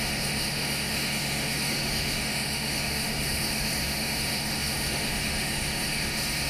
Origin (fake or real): fake